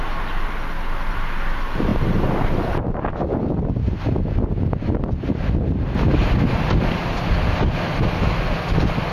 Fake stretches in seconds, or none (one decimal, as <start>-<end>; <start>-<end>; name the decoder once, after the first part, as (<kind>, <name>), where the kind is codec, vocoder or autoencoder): none

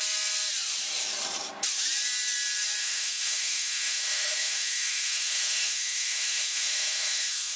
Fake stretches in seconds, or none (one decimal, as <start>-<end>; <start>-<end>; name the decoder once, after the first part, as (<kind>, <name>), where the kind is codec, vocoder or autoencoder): 2.8-7.6 (autoencoder, DAC-VAE)

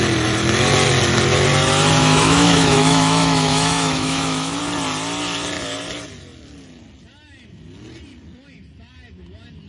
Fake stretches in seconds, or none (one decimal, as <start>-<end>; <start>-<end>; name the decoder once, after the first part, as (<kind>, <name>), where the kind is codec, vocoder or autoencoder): 2.0-4.6 (autoencoder, DAC-VAE)